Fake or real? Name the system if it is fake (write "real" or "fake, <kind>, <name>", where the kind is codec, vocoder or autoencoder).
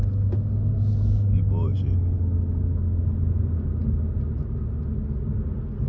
real